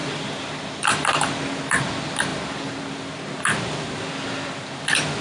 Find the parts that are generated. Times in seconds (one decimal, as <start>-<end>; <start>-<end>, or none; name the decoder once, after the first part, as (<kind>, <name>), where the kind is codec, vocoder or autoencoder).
0.0-1.3 (vocoder, BigVGAN v2); 2.3-2.8

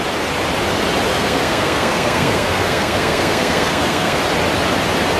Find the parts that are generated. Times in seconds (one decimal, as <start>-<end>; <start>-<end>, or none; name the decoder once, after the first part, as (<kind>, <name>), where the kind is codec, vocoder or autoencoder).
1.1-4.2 (codec, SNAC)

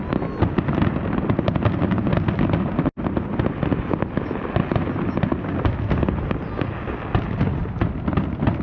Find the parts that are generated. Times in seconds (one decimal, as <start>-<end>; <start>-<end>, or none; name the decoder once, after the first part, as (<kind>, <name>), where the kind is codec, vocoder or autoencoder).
none

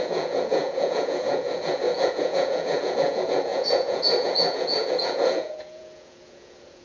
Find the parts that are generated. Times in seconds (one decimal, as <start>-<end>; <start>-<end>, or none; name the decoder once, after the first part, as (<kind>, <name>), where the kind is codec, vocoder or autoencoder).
0.0-6.8 (vocoder, Vocos)

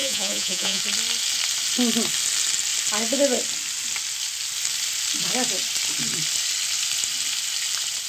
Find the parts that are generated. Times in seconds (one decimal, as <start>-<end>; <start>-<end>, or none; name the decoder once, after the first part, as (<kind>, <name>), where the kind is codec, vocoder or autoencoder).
0.0-0.8 (vocoder, Vocos)

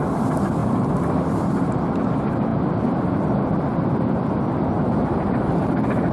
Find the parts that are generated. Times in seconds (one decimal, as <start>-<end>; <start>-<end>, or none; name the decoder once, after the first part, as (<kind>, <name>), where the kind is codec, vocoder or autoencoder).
none

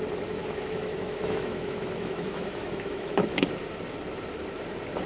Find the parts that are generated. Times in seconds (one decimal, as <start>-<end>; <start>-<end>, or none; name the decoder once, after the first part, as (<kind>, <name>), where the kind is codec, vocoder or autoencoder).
0.4-3.5 (autoencoder, DAC-VAE)